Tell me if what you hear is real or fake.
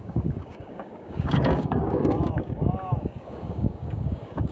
fake